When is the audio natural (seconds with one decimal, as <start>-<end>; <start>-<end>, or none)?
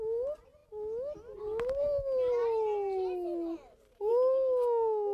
0.0-5.1